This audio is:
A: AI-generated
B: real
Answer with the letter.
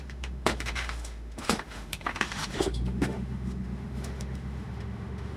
A